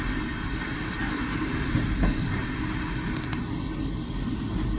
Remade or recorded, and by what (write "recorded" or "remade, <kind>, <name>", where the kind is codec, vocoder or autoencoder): recorded